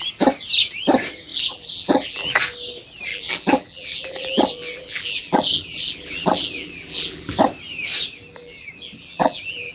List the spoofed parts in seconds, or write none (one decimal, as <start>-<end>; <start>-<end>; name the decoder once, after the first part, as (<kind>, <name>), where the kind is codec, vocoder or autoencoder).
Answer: 1.3-2.4 (vocoder, BigVGAN v2); 3.1-7.3; 8.4-9.7